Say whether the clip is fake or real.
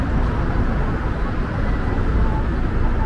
real